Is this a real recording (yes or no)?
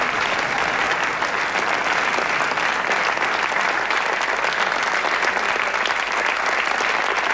yes